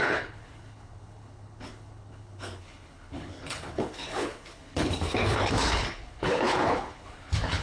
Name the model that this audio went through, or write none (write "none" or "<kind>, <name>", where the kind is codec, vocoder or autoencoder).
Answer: codec, HILCodec